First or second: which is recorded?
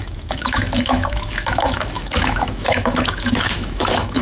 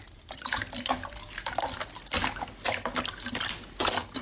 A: second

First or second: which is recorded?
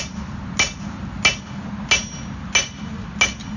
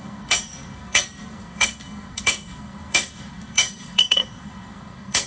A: first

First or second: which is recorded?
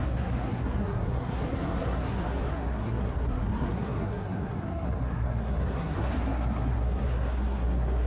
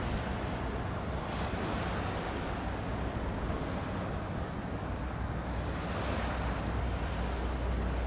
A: second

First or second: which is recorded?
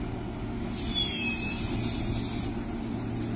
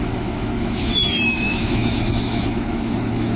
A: first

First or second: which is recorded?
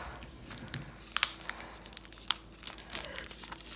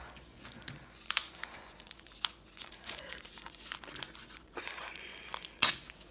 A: first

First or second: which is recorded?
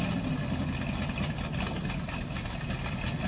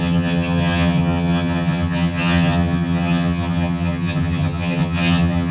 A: first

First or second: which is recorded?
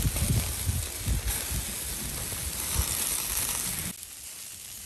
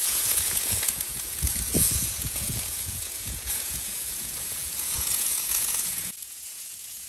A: first